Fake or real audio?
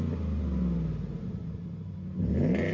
real